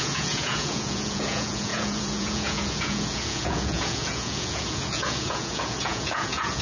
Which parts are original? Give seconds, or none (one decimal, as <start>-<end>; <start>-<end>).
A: none